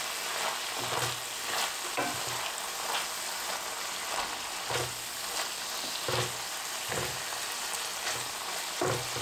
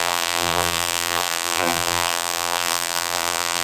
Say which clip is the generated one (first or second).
second